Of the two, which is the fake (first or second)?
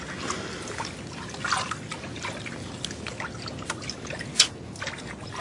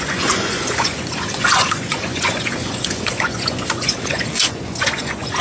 second